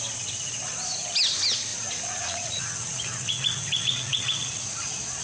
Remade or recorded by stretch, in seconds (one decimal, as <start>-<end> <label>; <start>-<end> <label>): 0.0-1.7 recorded; 1.7-4.8 remade; 4.8-5.2 recorded

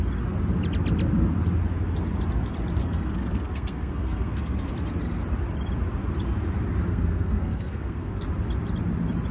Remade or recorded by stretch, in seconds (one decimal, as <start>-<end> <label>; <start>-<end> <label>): 0.0-2.8 recorded; 2.8-4.7 remade; 4.7-6.9 recorded; 6.9-8.2 remade; 8.2-9.3 recorded

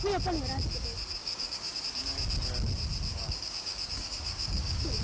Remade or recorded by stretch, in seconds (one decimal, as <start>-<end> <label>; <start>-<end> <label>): 0.0-1.2 recorded; 1.2-1.8 remade; 1.8-3.1 recorded; 3.1-5.0 remade

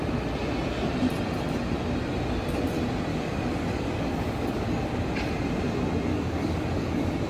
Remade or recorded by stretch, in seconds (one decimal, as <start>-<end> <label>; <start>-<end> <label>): 0.0-3.1 recorded; 3.1-5.0 remade; 5.0-6.1 recorded; 6.1-7.3 remade

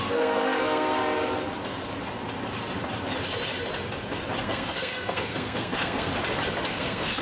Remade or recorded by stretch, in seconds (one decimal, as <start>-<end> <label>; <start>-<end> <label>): 0.0-1.0 remade; 1.0-4.4 recorded; 4.4-6.1 remade; 6.1-6.7 recorded; 6.7-7.2 remade